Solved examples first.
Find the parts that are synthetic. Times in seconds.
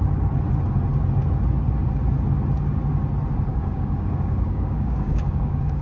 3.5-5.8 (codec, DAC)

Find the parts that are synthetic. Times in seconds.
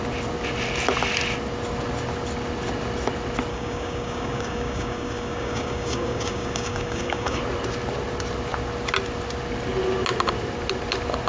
3.5-7.4 (codec, DAC)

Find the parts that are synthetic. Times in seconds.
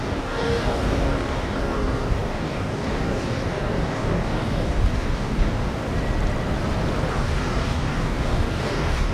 0.0-5.8 (codec, DAC); 7.1-9.1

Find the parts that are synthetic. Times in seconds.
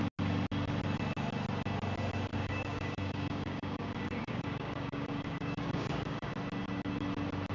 2.3-6.3 (codec, DAC)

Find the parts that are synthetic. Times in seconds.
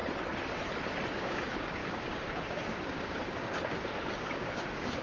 1.1-5.0 (codec, DAC)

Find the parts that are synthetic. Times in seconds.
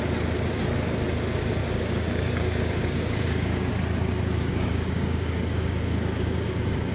1.6-3.7 (codec, DAC); 4.5-6.9